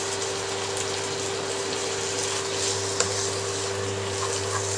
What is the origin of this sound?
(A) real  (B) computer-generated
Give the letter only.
A